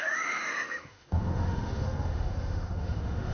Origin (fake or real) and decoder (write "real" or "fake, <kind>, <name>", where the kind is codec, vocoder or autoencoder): fake, autoencoder, DAC-VAE